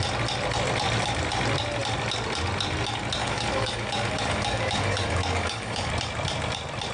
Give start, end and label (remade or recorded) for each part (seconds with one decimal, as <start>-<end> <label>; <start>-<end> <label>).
0.0-3.2 recorded; 3.2-5.9 remade; 5.9-6.9 recorded